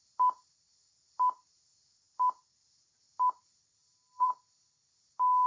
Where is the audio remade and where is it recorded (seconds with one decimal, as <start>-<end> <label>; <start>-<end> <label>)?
0.0-3.8 recorded; 3.8-4.8 remade; 4.8-5.5 recorded